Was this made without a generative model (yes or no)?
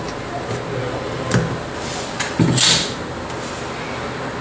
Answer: yes